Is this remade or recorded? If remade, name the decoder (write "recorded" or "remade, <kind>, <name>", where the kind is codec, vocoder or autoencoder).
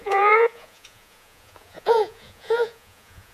remade, vocoder, Vocos